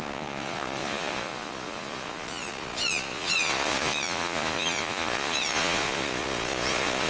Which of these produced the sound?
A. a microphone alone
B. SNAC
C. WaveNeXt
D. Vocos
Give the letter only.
D